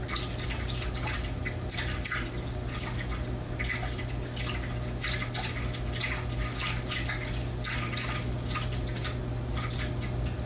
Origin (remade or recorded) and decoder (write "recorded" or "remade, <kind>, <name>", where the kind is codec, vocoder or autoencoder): recorded